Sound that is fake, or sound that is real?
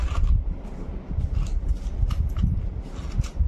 real